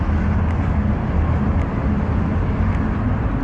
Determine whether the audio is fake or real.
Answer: real